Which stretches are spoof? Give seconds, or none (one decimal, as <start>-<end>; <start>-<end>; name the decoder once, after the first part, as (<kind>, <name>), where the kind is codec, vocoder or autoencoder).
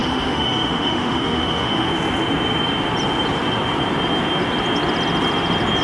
0.0-1.9 (autoencoder, DAC-VAE)